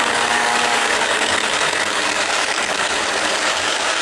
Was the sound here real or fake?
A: fake